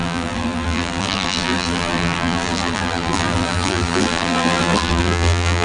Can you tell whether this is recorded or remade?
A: remade